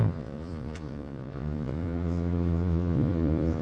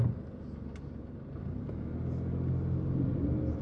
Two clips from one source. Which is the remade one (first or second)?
first